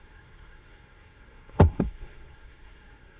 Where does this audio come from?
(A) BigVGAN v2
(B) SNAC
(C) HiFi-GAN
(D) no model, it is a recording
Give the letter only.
B